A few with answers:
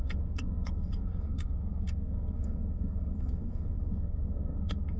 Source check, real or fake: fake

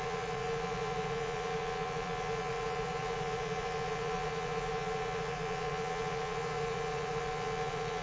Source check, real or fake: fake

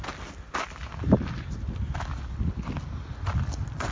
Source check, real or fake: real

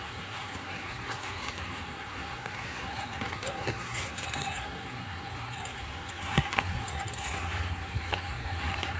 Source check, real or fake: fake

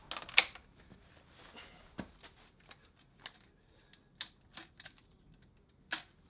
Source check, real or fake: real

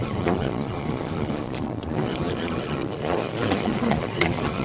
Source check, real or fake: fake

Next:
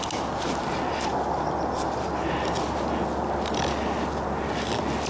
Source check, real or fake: real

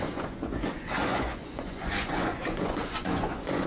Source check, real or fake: fake